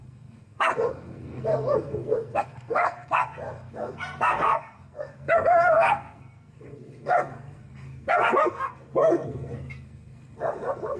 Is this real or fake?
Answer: fake